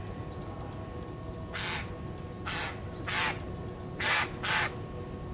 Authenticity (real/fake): real